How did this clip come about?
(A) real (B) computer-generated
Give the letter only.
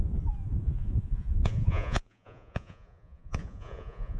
B